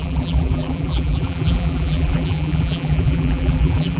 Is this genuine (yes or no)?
no